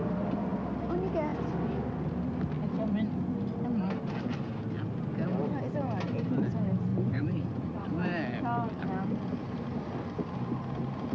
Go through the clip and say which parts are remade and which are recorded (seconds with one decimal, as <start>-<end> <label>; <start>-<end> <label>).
0.0-6.9 recorded; 6.9-7.9 remade; 7.9-11.1 recorded